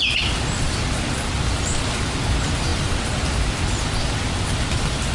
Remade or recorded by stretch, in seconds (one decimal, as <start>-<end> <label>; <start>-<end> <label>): 0.0-5.1 recorded